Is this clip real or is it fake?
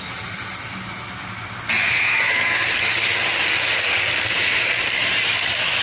real